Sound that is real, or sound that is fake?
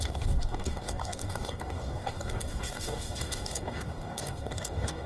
fake